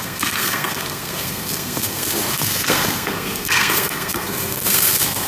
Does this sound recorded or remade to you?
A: remade